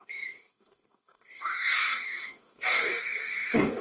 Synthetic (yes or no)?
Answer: yes